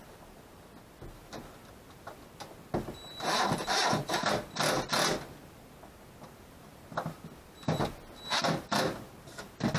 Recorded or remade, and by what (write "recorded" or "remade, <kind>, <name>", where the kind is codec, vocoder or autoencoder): recorded